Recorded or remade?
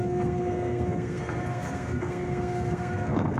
remade